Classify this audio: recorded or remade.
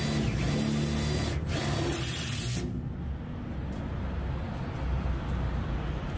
recorded